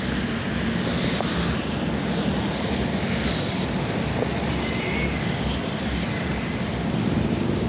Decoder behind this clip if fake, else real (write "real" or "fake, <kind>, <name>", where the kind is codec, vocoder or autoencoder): real